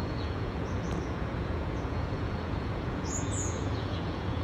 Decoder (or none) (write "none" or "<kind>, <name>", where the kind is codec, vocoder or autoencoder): vocoder, Vocos